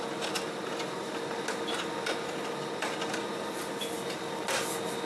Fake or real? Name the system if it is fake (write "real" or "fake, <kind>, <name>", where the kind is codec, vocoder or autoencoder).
real